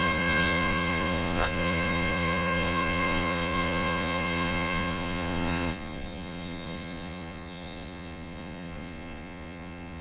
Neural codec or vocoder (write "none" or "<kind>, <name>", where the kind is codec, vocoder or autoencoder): vocoder, Vocos